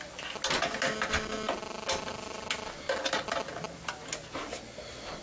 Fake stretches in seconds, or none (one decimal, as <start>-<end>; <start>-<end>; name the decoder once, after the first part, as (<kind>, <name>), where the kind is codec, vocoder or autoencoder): none